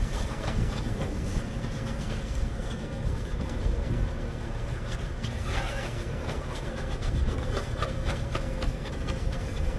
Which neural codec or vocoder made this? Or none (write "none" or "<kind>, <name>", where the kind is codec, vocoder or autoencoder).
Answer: codec, SNAC